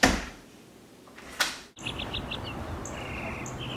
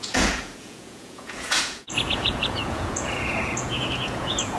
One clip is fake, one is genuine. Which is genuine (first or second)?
first